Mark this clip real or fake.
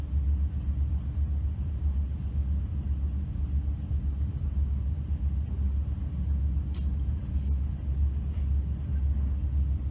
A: real